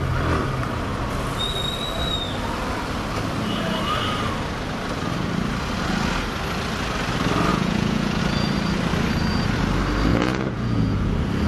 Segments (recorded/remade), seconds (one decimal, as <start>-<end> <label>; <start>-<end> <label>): 0.0-7.5 recorded; 7.5-8.2 remade; 8.2-10.1 recorded; 10.1-11.1 remade; 11.1-11.5 recorded